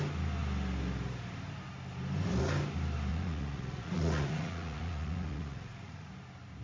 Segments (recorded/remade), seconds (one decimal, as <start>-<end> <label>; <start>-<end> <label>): 0.0-3.1 recorded; 3.1-6.1 remade; 6.1-6.6 recorded